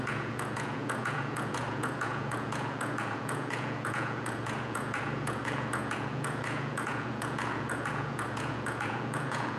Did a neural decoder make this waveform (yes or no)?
yes